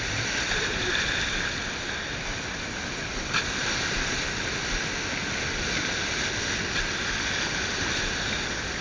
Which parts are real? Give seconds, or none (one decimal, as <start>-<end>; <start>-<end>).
0.0-8.8